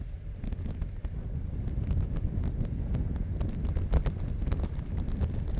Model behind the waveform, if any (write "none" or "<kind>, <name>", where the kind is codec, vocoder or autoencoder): none